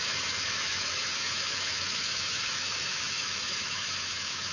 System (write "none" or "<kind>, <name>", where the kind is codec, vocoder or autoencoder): autoencoder, DAC-VAE